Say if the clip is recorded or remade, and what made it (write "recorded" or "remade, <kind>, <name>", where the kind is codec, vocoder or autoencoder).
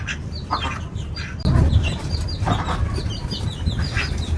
remade, vocoder, BigVGAN v2